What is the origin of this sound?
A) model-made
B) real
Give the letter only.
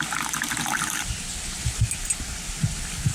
B